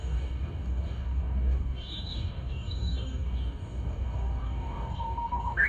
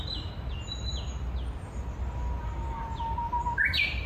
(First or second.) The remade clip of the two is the first